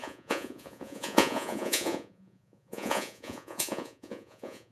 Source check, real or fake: fake